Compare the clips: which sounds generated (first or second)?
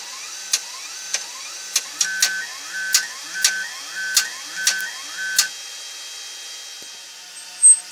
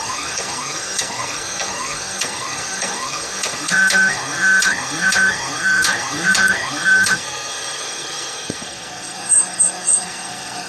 second